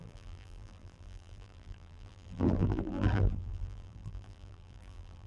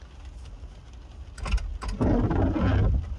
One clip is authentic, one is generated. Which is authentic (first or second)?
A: second